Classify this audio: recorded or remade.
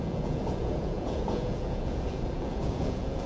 remade